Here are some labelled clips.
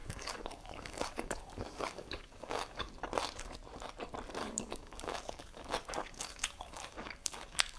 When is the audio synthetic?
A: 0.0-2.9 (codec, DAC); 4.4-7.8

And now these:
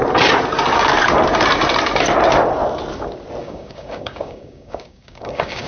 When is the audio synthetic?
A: 3.4-5.7 (codec, DAC)

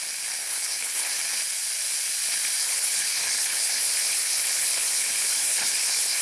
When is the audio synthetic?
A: 0.4-1.2 (codec, HILCodec); 2.6-6.2

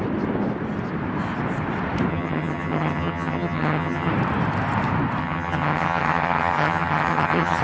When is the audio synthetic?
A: 2.1-4.1 (vocoder, HiFi-GAN); 5.2-7.6

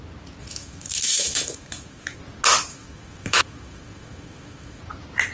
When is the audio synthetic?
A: 0.4-2.2 (autoencoder, DAC-VAE); 2.7-4.8

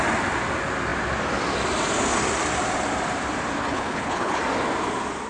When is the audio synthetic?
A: 3.6-4.4 (codec, HILCodec)